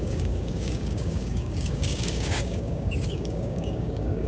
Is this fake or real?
fake